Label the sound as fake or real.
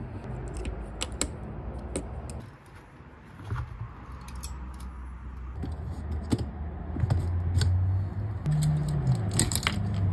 real